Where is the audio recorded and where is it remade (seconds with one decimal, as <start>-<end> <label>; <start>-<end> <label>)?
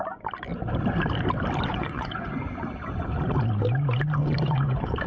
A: 0.0-1.7 recorded; 1.7-2.4 remade; 2.4-4.2 recorded; 4.2-5.1 remade